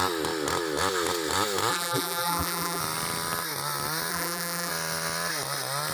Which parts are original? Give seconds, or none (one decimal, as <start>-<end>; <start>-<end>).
0.0-1.7; 2.8-4.1; 4.7-5.9

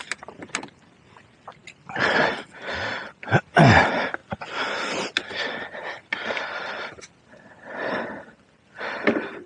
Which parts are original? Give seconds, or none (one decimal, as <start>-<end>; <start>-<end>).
0.0-9.5

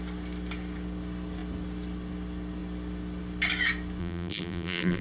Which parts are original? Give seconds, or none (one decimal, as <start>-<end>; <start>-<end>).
0.0-4.0

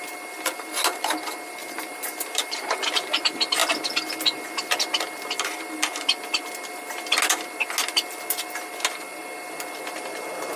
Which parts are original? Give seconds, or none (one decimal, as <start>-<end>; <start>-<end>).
0.0-1.6; 3.1-10.6

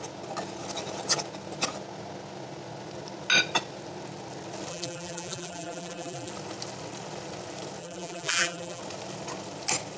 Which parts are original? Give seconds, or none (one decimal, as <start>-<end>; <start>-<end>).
0.0-4.7; 6.3-7.8; 8.8-10.0

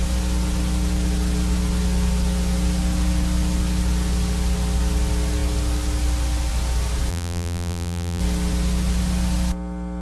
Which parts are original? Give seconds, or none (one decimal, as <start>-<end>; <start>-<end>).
0.0-7.1; 8.2-10.0